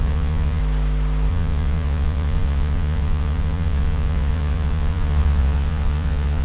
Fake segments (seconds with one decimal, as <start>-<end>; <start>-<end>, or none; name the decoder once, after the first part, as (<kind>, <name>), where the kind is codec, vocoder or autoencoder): 0.0-0.6 (vocoder, Vocos); 1.3-6.4